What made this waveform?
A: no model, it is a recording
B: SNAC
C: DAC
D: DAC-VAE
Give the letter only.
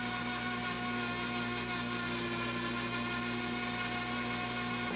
A